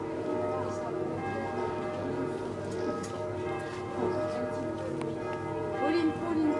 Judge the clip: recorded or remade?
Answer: recorded